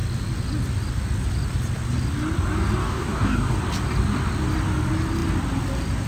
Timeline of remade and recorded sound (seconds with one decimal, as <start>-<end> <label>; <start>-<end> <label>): 0.0-2.8 recorded; 2.8-3.6 remade; 3.6-6.1 recorded